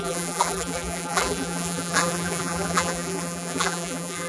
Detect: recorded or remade remade